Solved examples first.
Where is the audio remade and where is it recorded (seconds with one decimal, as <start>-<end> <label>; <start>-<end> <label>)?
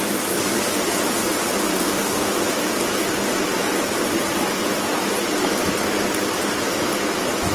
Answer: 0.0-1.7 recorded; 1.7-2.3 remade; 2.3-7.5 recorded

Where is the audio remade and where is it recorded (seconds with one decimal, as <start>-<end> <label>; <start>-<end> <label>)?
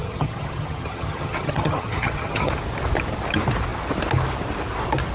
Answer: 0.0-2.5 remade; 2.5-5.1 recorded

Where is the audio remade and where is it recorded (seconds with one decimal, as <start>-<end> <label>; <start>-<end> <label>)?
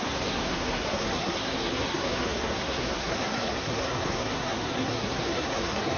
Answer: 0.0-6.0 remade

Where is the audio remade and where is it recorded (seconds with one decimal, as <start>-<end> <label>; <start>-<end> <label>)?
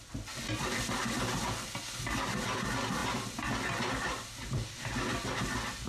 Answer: 0.0-5.9 recorded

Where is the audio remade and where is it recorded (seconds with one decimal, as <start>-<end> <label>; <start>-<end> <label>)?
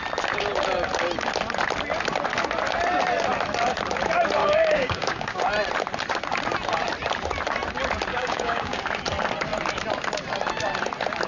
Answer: 0.0-4.4 recorded; 4.4-5.4 remade; 5.4-8.1 recorded; 8.1-8.8 remade; 8.8-11.3 recorded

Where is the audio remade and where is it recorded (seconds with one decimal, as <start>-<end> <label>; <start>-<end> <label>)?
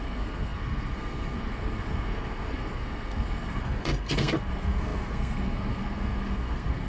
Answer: 0.0-6.9 remade